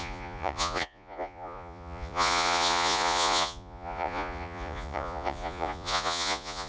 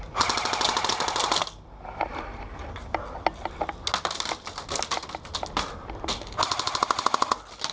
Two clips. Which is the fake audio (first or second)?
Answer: first